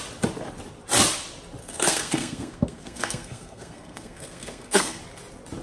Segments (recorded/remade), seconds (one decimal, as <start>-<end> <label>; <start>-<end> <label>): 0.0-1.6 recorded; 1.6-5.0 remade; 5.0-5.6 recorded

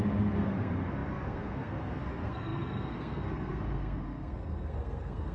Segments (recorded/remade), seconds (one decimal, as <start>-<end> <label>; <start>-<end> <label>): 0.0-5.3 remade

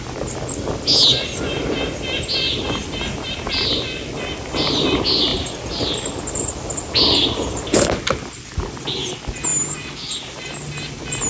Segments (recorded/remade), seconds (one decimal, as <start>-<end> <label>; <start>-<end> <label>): 0.0-11.3 recorded

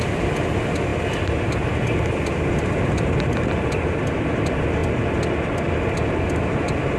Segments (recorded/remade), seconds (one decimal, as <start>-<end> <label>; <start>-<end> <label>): 0.0-7.0 recorded

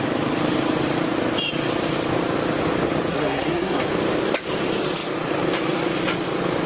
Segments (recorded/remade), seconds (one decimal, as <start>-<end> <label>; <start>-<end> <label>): 0.0-3.1 recorded; 3.1-3.8 remade; 3.8-6.7 recorded

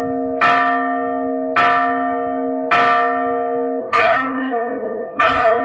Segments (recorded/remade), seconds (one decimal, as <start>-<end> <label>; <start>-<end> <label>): 0.0-3.8 recorded; 3.8-5.6 remade

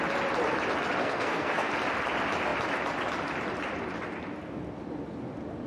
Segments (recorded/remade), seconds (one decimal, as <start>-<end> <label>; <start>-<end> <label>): 0.0-1.0 recorded; 1.0-1.7 remade; 1.7-5.7 recorded

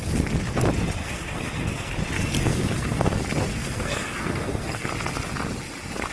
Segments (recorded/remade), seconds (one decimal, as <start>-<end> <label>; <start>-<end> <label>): 0.0-1.0 recorded; 1.0-2.0 remade; 2.0-2.4 recorded; 2.4-3.2 remade; 3.2-3.6 recorded; 3.6-4.9 remade; 4.9-6.1 recorded